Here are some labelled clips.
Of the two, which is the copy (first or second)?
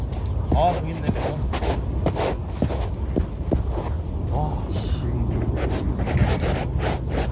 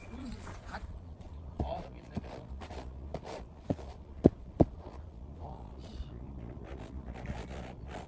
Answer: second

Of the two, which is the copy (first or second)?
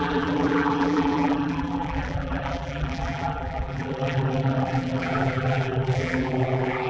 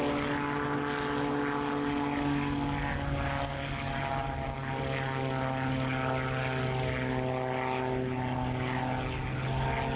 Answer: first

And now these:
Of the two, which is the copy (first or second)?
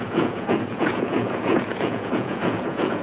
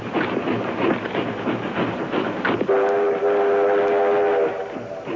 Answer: first